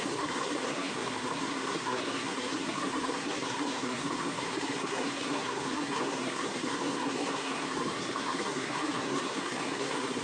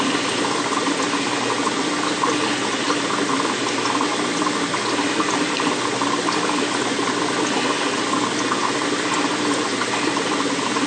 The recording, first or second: second